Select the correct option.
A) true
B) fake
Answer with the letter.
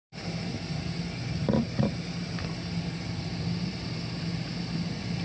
A